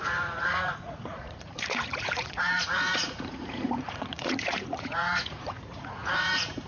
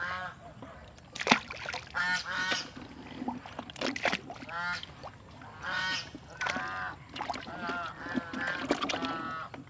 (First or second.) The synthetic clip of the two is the first